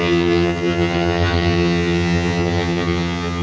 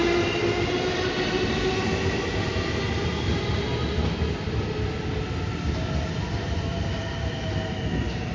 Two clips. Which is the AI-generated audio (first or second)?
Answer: first